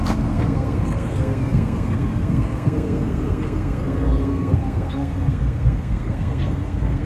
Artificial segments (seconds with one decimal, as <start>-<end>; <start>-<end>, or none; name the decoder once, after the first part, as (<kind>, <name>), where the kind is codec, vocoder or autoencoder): 0.0-7.1 (codec, SNAC)